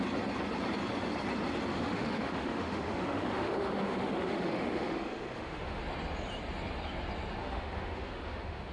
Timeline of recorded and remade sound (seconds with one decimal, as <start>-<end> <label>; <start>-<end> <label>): 0.0-1.7 recorded; 1.7-5.8 remade; 5.8-7.4 recorded; 7.4-8.7 remade

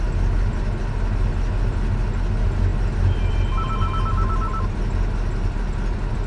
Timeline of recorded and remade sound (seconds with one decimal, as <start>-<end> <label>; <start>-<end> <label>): 0.0-6.3 recorded

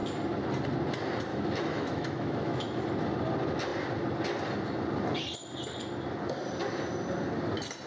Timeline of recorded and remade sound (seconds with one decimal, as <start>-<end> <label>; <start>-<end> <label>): 0.0-1.3 recorded; 1.3-2.8 remade; 2.8-7.9 recorded